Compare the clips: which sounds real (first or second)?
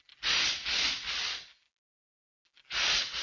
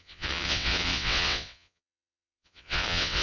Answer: first